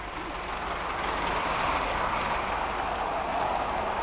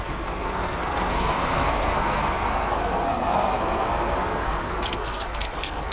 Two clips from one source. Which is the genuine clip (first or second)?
first